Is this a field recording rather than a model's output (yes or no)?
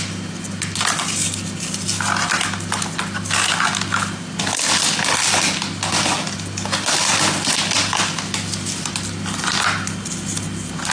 yes